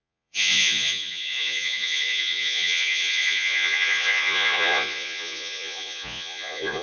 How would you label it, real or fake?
fake